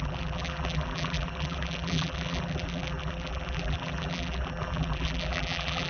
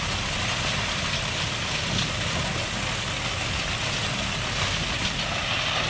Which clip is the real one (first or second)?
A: second